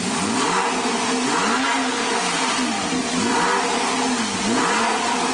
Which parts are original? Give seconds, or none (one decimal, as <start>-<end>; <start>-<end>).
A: 0.0-5.3